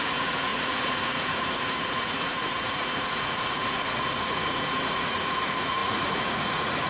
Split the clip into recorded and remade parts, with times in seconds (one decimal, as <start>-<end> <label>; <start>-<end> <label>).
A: 0.0-6.9 remade